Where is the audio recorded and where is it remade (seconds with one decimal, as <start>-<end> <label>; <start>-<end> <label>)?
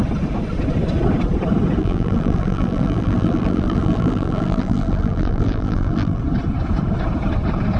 0.0-1.8 recorded; 1.8-6.2 remade; 6.2-7.8 recorded